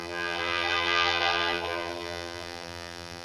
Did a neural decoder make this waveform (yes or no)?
yes